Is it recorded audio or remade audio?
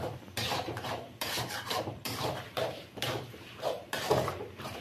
remade